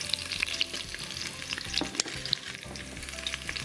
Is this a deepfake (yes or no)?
no